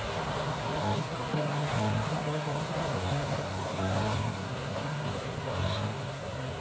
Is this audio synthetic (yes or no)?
yes